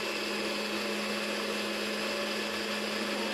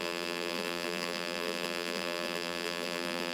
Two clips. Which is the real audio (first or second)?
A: first